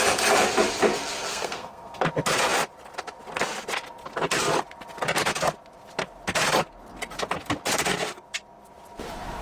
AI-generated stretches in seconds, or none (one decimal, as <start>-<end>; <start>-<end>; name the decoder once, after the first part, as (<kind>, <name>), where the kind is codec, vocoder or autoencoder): 1.3-2.0 (codec, SNAC)